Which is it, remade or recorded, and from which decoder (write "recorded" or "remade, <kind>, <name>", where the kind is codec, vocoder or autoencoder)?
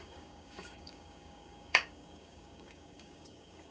remade, codec, DAC